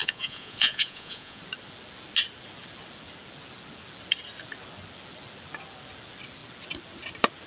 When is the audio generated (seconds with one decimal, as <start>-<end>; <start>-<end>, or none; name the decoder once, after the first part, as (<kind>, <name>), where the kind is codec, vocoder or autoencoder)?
0.0-1.4 (vocoder, Vocos)